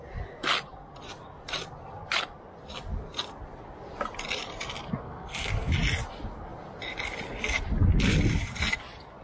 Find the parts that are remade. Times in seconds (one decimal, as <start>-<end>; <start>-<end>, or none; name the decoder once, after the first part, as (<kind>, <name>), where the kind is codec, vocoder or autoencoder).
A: 5.0-5.7 (codec, SNAC)